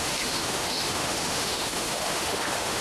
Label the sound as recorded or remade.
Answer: remade